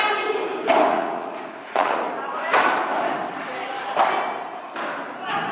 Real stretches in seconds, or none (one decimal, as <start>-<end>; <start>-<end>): 0.0-0.9; 2.0-5.5